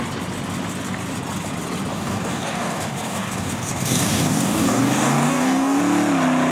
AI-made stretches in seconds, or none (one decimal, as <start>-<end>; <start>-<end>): 1.9-5.8